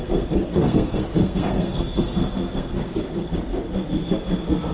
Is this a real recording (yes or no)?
no